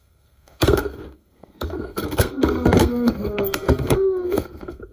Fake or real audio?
fake